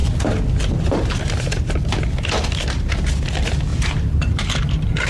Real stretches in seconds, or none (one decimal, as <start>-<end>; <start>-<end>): 0.0-3.7